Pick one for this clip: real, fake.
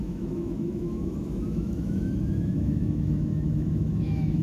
fake